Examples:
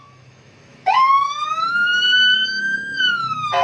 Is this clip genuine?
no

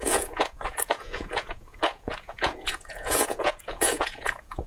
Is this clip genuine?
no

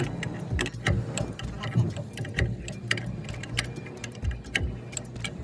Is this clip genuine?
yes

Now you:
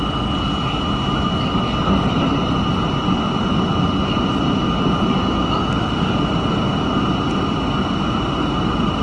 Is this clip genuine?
yes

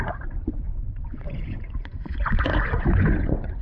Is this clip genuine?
no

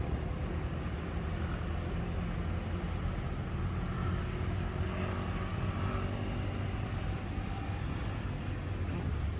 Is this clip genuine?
yes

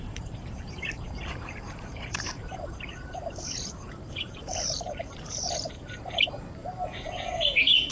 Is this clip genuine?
no